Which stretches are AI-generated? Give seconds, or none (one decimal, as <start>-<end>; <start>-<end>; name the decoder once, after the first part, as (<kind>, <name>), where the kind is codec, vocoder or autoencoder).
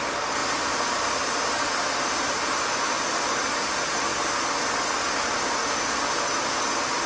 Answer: 0.0-4.1 (vocoder, BigVGAN v2); 4.8-5.6